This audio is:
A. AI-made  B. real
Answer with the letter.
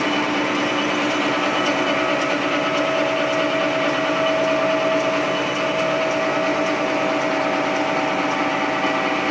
B